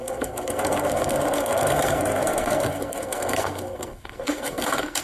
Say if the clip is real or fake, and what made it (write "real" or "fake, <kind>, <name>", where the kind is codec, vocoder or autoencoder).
fake, codec, SNAC